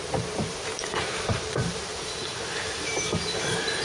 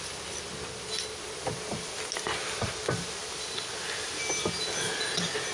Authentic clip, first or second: second